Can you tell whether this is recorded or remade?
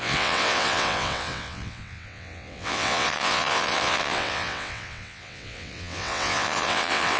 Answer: remade